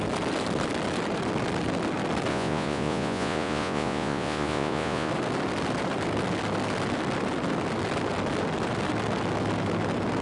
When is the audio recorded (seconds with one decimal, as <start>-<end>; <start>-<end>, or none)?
0.0-2.3; 5.1-10.2